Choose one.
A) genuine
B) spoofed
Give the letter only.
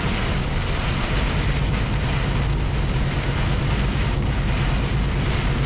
A